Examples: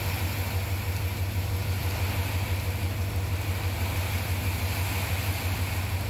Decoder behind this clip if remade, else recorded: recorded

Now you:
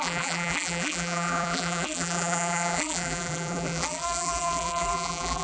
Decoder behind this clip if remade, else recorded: remade, vocoder, BigVGAN v2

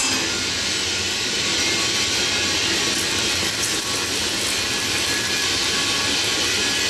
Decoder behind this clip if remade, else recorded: recorded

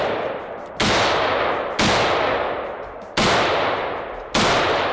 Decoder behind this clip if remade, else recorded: recorded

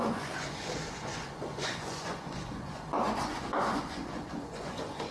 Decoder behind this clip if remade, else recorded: remade, vocoder, Vocos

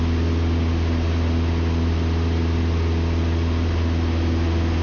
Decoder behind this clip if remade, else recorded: recorded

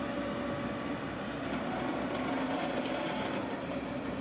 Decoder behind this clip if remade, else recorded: recorded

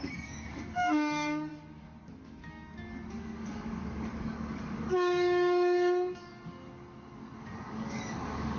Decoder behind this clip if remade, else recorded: remade, codec, DAC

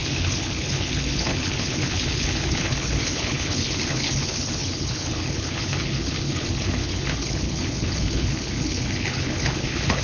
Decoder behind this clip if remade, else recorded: remade, codec, HILCodec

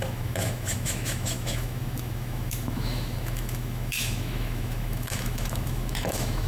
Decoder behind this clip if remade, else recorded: remade, autoencoder, DAC-VAE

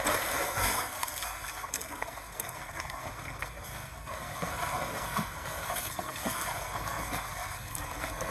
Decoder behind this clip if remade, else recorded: remade, codec, SNAC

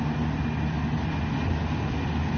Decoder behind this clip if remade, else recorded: recorded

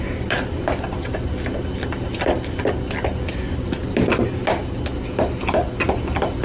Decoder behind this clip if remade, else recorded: recorded